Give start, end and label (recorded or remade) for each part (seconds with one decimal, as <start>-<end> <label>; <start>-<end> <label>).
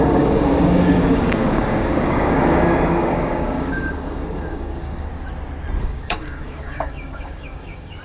0.0-5.1 remade; 5.1-5.8 recorded; 5.8-8.0 remade